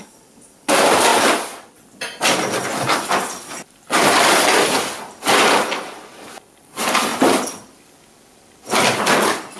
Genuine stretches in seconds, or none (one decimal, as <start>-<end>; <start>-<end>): 0.0-9.6